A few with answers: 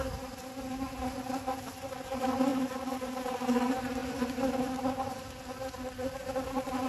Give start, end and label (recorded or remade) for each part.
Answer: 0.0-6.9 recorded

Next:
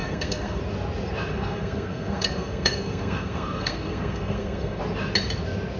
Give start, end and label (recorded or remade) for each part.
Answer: 0.0-0.6 remade; 0.6-1.3 recorded; 1.3-4.8 remade; 4.8-5.8 recorded

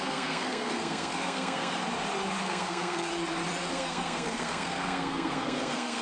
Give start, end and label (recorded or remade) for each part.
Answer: 0.0-1.8 remade; 1.8-2.4 recorded; 2.4-3.1 remade; 3.1-3.7 recorded; 3.7-6.0 remade

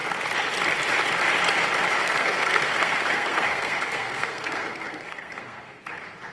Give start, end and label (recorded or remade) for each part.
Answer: 0.0-2.0 recorded; 2.0-5.8 remade; 5.8-6.3 recorded

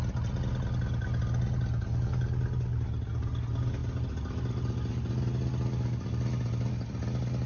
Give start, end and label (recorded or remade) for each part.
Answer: 0.0-7.5 recorded

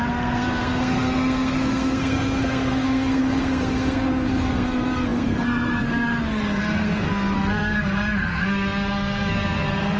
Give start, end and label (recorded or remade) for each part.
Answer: 0.0-10.0 remade

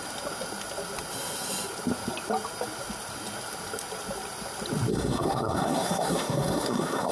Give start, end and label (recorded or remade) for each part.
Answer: 0.0-4.9 recorded; 4.9-7.1 remade